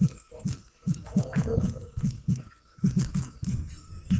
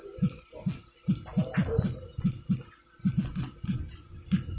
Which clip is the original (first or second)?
second